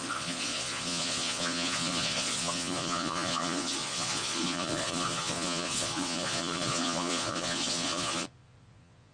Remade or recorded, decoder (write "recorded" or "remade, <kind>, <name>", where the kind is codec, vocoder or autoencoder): remade, vocoder, Vocos